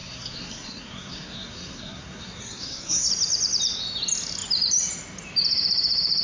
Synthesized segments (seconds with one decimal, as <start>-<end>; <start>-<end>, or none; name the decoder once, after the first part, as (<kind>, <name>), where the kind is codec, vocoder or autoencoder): 0.0-3.1 (codec, SNAC)